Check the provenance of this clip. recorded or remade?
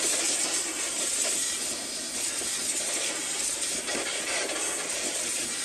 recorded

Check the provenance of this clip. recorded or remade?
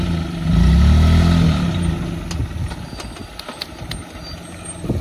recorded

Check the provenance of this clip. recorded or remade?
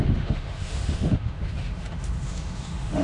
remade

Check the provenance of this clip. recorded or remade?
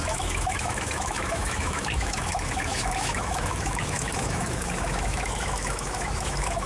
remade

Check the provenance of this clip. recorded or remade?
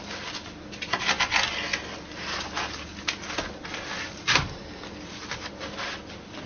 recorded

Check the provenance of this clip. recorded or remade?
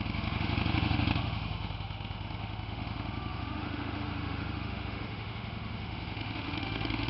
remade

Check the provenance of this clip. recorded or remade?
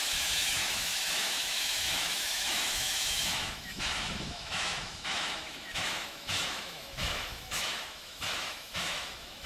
remade